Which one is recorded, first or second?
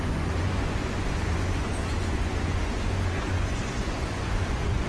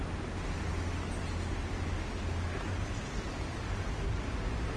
second